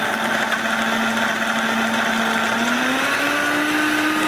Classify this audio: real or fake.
real